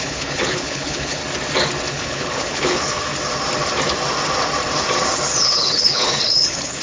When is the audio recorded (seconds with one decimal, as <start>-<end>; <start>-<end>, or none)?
1.2-1.9; 3.1-5.4